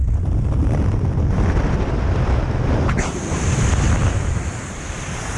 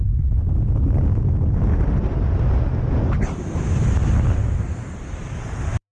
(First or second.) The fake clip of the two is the first